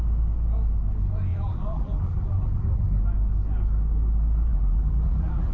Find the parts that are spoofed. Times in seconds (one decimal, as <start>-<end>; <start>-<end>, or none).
1.3-3.0; 4.5-5.5